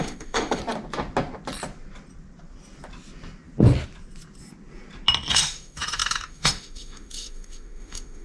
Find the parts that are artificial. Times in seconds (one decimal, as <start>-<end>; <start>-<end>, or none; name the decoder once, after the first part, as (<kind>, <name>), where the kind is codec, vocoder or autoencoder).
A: 0.0-0.6 (autoencoder, DAC-VAE); 5.3-8.2